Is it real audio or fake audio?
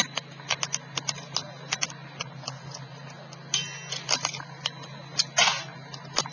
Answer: real